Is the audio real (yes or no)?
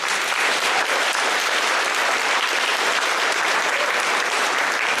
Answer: no